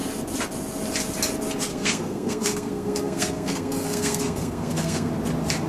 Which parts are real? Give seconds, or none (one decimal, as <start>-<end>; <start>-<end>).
0.0-1.7; 5.1-5.7